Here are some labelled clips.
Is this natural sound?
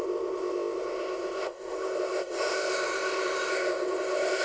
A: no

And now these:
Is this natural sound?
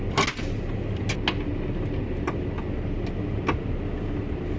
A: yes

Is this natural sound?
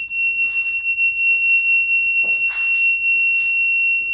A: yes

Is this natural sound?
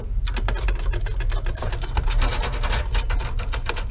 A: yes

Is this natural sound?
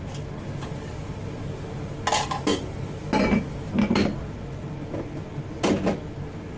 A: yes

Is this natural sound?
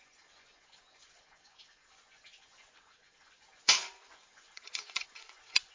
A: no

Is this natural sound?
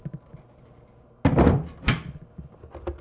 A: yes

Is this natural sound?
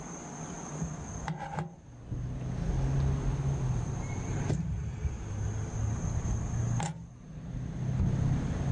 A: yes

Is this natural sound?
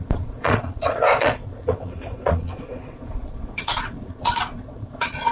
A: no